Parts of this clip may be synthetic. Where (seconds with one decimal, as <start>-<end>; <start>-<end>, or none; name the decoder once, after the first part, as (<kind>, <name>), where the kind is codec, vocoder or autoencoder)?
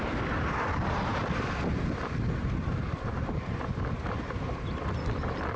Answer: 2.4-4.9 (vocoder, BigVGAN v2)